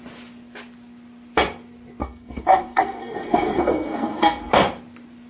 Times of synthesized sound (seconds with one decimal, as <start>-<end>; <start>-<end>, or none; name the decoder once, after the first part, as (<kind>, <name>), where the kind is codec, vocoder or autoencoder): 2.0-4.5 (codec, SNAC)